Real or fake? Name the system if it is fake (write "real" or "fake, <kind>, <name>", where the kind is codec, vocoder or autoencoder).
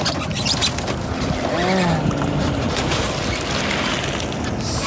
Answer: real